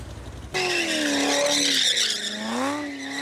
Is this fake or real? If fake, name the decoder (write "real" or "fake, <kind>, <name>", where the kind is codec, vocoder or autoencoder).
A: real